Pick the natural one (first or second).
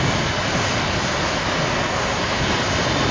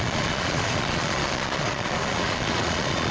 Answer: first